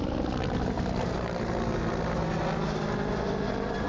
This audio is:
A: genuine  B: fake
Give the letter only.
A